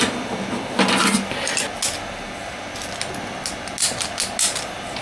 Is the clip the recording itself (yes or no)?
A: yes